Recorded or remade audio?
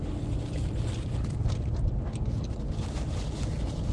recorded